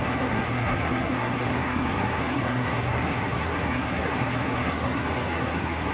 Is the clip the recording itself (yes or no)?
no